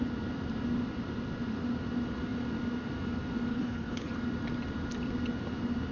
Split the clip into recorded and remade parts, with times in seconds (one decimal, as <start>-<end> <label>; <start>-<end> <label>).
0.0-3.5 recorded; 3.5-4.1 remade; 4.1-5.9 recorded